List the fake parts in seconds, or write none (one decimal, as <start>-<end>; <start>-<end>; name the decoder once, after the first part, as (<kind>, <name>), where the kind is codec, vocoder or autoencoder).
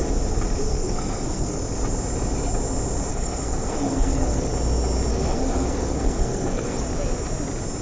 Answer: 0.7-1.6 (codec, SNAC); 3.1-4.5; 5.1-6.8